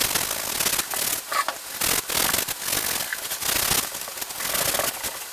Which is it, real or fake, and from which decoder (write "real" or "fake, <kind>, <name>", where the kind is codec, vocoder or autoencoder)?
real